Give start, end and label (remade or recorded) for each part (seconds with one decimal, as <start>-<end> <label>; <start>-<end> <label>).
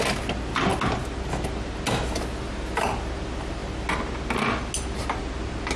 0.0-5.8 recorded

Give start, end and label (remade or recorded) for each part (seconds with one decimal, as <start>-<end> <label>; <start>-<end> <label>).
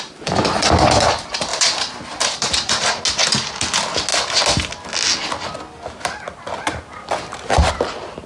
0.0-1.5 recorded; 1.5-3.0 remade; 3.0-8.3 recorded